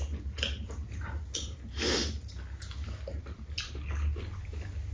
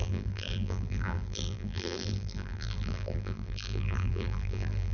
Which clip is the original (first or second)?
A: first